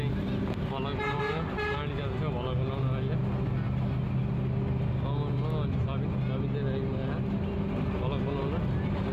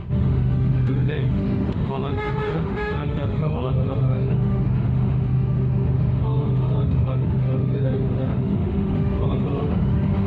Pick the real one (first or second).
first